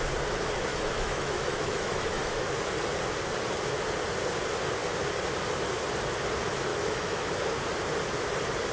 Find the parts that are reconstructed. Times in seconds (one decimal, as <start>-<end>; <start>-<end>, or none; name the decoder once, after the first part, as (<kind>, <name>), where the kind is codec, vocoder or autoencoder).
0.7-2.4 (autoencoder, DAC-VAE); 6.7-7.3